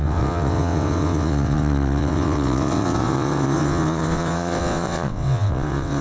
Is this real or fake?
fake